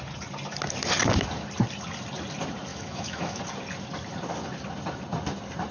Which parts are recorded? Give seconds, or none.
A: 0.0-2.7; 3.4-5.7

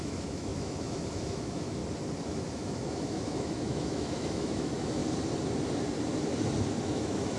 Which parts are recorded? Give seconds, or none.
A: 1.8-2.3; 5.0-6.8